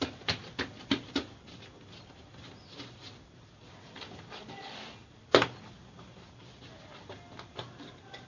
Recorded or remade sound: recorded